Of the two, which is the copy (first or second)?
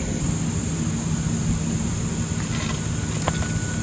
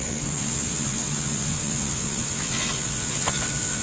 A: second